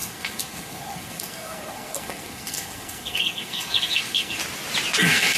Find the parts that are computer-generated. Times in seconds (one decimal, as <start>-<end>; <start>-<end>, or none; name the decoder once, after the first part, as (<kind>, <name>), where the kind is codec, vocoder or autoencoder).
0.0-4.4 (codec, SNAC); 5.0-5.4